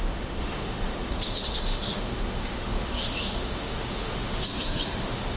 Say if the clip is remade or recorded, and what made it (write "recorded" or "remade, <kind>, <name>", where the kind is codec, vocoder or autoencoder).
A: remade, autoencoder, DAC-VAE